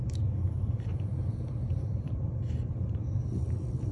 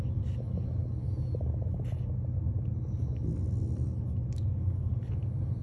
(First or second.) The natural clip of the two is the second